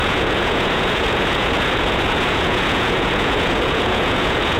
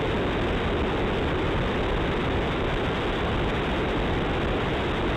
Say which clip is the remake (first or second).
first